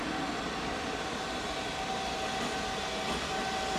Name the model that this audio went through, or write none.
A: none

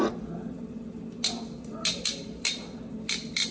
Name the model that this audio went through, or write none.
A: none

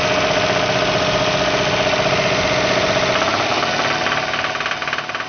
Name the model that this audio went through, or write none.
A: none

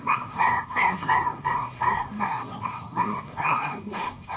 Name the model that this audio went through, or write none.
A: codec, SNAC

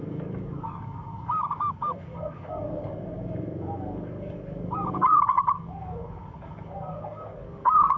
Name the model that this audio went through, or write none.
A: codec, DAC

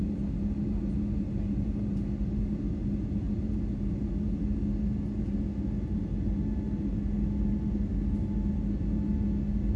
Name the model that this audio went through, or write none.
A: none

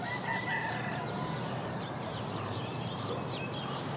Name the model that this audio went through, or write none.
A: vocoder, BigVGAN v2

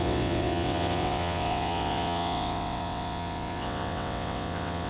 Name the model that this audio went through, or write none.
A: vocoder, WaveNeXt